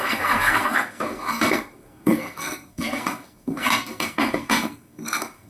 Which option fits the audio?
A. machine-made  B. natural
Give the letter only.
A